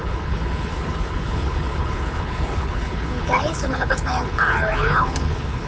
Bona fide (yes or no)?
no